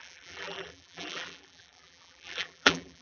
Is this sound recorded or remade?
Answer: remade